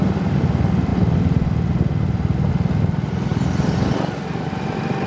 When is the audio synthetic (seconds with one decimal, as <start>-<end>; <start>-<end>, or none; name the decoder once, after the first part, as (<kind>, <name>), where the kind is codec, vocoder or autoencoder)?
none